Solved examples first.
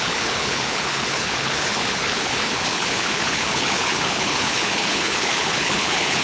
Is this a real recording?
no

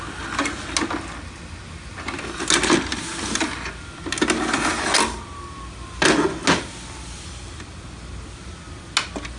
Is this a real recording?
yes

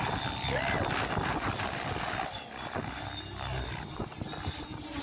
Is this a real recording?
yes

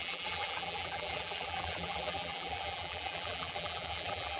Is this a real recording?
no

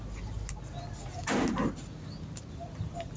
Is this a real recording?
yes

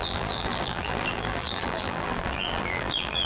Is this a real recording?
no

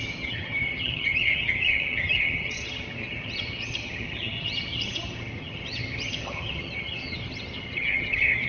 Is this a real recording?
no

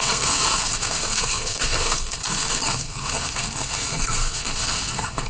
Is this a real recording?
no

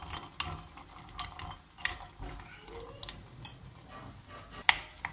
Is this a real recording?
yes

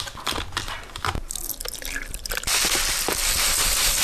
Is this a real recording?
yes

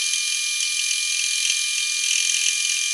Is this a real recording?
yes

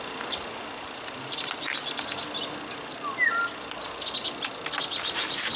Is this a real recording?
yes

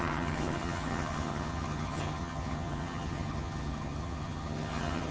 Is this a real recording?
no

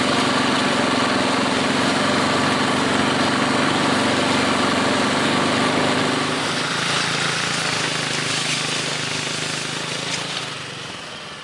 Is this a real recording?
yes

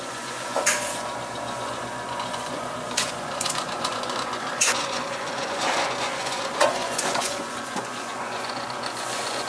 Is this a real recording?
no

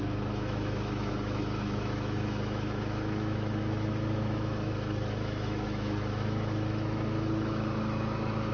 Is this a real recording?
no